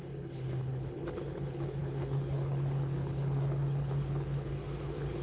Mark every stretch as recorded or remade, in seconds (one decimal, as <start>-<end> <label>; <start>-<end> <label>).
0.0-5.2 remade